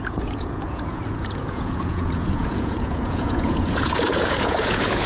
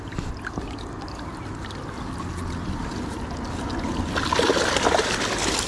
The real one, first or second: second